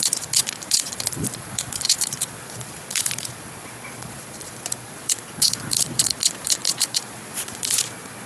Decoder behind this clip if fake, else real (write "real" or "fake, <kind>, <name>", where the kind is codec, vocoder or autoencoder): fake, vocoder, Vocos